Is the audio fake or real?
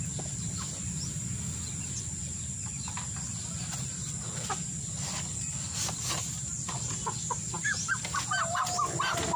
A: real